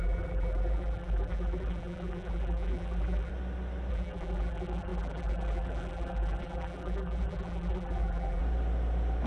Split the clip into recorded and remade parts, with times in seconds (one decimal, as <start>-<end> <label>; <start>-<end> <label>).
0.0-3.3 remade; 3.3-3.9 recorded; 3.9-8.4 remade; 8.4-9.3 recorded

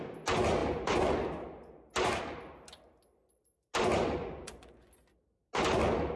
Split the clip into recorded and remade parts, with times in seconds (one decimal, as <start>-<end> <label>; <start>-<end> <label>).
0.0-4.2 recorded; 4.2-4.9 remade; 4.9-6.2 recorded